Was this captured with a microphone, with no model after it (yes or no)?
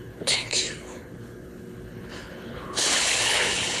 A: no